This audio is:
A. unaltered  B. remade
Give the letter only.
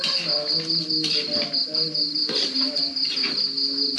A